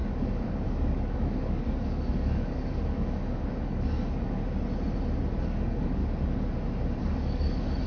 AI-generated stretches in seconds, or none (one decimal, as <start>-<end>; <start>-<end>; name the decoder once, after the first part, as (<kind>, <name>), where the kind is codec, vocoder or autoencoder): 0.0-4.4 (codec, DAC); 5.4-6.0; 7.0-7.9